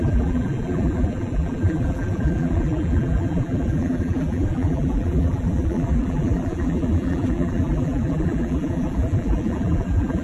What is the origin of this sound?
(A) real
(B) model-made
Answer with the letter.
B